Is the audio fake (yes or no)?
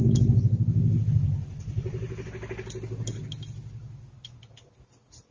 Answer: no